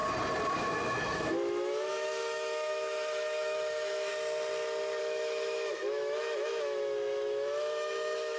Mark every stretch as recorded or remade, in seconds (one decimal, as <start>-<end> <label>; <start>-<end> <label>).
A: 0.0-0.6 recorded; 0.6-4.1 remade; 4.1-5.0 recorded; 5.0-8.4 remade